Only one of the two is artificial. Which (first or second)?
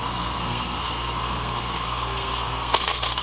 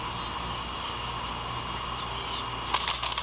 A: first